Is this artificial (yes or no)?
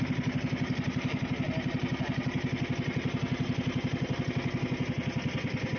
no